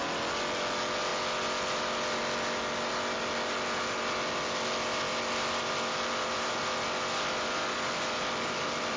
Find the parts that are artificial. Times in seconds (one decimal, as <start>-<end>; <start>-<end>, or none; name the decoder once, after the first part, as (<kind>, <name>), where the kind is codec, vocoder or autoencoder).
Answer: none

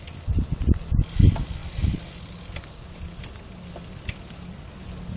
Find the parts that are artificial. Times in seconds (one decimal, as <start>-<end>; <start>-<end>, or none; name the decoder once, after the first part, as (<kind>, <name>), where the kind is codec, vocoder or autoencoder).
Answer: none